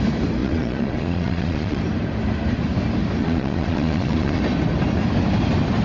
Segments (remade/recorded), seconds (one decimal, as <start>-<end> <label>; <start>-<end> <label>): 0.0-0.4 recorded; 0.4-1.8 remade; 1.8-3.2 recorded; 3.2-4.4 remade; 4.4-5.8 recorded